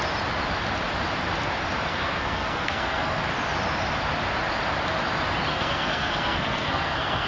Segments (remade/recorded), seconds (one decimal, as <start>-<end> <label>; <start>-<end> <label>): 0.0-1.9 recorded; 1.9-3.2 remade; 3.2-5.5 recorded; 5.5-7.3 remade